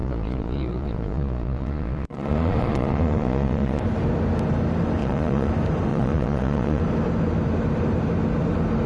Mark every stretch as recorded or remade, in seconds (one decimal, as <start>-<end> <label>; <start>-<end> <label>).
0.0-3.8 remade; 3.8-5.0 recorded; 5.0-5.5 remade; 5.5-5.9 recorded; 5.9-6.8 remade; 6.8-8.9 recorded